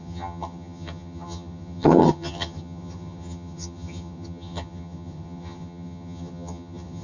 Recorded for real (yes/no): no